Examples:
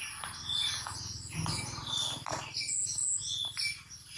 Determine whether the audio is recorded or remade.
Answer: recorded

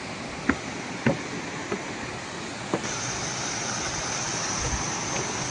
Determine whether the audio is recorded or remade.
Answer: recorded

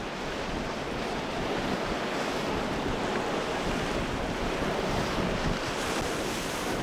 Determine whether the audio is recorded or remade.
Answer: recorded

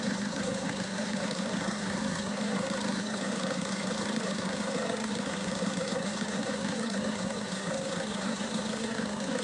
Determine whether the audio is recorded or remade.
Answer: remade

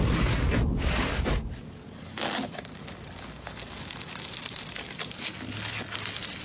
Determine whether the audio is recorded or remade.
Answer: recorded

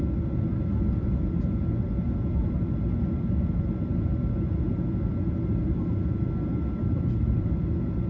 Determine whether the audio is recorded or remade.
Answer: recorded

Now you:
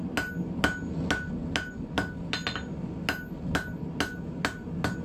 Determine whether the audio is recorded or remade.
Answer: recorded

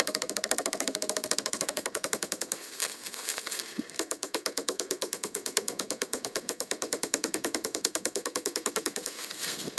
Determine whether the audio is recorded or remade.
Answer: remade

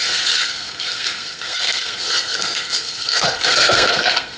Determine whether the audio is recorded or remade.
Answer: remade